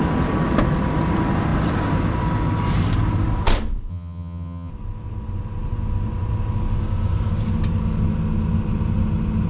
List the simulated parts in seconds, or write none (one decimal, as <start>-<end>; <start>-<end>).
3.9-4.7